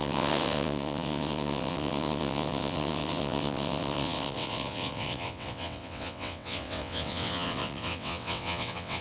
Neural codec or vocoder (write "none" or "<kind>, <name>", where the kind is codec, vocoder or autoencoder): vocoder, WaveNeXt